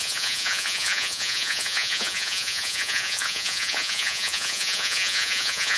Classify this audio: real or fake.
fake